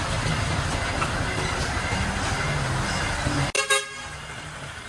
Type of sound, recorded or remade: recorded